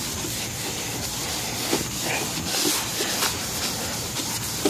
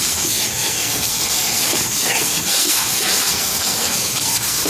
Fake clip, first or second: second